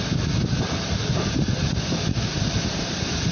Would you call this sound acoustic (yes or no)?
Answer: yes